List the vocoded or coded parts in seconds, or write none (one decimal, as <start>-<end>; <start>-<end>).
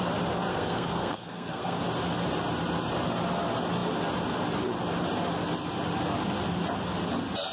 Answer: 0.5-1.8